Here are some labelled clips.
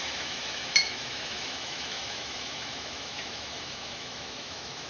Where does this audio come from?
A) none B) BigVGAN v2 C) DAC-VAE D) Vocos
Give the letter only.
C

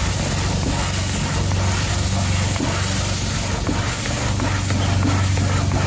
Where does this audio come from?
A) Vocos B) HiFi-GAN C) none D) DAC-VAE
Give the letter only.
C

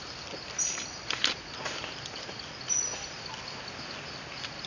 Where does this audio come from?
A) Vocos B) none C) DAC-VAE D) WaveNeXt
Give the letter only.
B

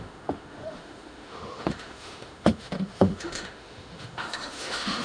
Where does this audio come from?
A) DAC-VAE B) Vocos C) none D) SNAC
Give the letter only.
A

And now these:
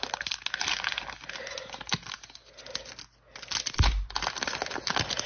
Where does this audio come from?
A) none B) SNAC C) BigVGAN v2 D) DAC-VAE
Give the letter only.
A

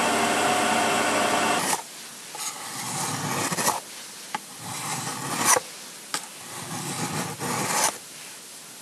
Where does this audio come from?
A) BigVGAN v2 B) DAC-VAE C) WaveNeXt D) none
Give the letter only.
D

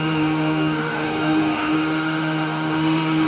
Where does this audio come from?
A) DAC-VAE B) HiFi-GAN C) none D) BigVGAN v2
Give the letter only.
A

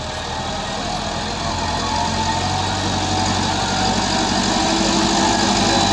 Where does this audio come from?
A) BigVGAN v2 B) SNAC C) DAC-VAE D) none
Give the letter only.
D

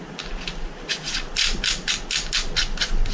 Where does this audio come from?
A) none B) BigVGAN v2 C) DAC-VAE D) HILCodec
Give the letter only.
A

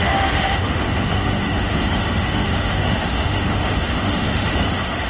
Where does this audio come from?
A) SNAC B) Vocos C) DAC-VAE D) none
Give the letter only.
C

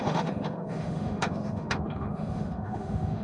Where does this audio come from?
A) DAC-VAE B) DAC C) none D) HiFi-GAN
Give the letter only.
A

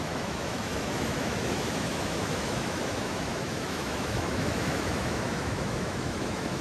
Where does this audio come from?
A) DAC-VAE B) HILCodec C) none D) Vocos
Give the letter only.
A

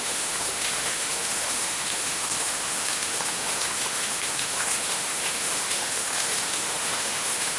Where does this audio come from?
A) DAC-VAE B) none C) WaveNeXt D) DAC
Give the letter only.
A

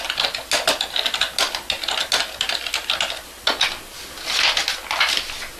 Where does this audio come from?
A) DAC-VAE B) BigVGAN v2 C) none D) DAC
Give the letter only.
C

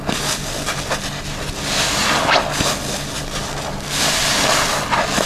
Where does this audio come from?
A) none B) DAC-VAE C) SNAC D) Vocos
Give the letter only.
A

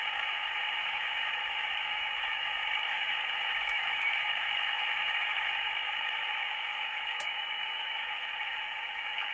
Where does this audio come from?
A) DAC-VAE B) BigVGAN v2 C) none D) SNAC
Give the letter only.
A